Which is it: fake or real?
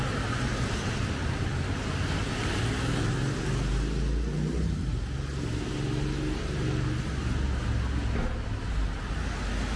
real